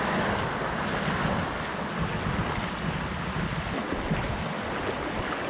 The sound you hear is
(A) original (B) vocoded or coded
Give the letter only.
A